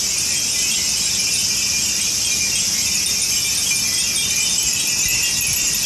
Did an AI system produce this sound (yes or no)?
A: no